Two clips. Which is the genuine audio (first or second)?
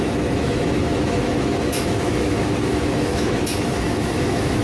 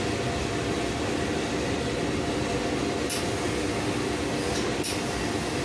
second